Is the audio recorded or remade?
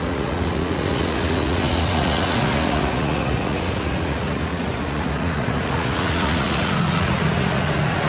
remade